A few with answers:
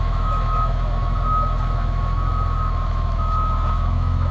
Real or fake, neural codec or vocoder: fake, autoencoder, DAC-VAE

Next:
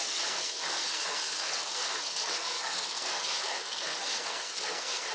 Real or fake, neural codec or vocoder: fake, codec, SNAC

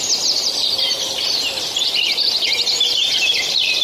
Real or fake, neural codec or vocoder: real